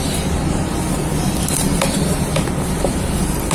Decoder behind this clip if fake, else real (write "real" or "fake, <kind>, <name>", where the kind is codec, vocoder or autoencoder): fake, vocoder, BigVGAN v2